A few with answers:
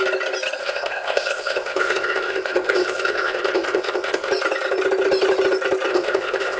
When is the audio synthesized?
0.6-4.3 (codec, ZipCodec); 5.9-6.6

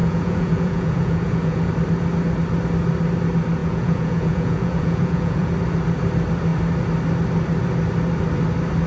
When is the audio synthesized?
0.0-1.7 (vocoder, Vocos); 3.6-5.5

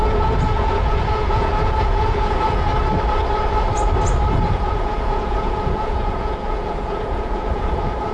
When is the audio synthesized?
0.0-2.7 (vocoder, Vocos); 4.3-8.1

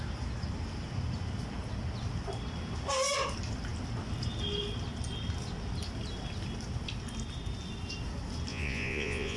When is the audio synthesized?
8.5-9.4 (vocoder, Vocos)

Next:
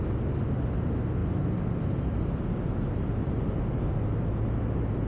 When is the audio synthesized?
none

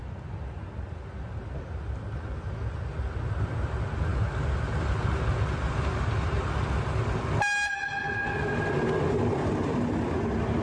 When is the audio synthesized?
none